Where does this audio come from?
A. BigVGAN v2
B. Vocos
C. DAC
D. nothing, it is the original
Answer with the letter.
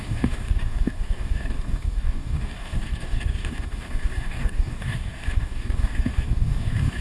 C